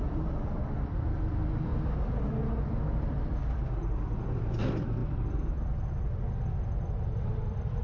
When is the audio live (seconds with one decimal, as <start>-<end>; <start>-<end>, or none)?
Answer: none